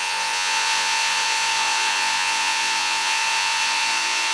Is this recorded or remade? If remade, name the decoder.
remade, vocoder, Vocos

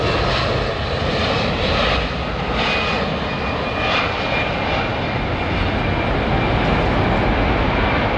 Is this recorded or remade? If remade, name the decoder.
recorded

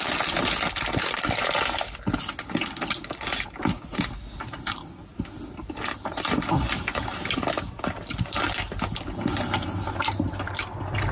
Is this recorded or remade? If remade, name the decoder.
recorded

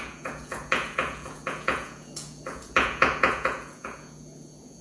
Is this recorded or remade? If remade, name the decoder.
remade, vocoder, Vocos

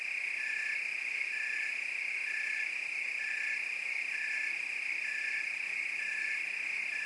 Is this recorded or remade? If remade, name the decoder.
recorded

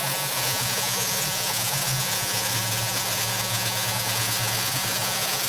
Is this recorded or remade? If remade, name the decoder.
remade, vocoder, Vocos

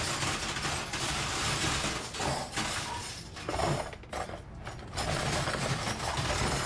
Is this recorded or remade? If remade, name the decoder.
recorded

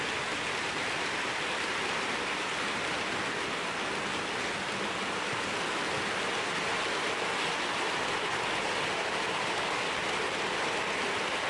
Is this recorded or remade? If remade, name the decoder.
recorded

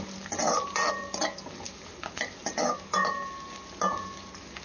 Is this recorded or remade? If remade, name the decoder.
recorded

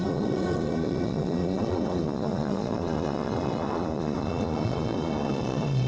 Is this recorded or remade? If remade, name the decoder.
remade, vocoder, Vocos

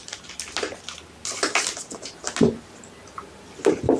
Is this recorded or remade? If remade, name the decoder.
recorded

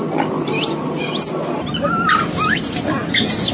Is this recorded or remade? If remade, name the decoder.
recorded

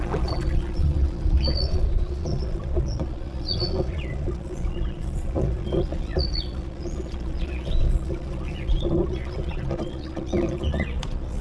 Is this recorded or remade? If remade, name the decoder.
remade, vocoder, Vocos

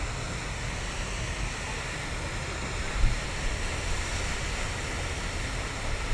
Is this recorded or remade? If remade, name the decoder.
recorded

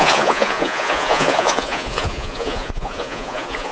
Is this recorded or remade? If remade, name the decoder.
remade, vocoder, Vocos